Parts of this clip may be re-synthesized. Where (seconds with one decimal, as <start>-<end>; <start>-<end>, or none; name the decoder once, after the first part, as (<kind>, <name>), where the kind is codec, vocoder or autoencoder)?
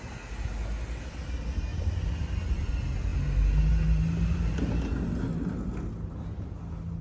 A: none